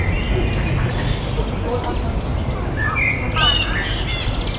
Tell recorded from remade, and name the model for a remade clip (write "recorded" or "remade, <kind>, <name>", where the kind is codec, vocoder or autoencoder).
recorded